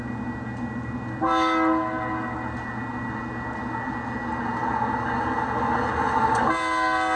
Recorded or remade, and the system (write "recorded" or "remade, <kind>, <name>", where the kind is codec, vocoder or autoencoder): recorded